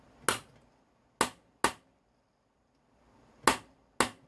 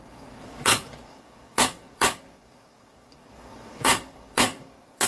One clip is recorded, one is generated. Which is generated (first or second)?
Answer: second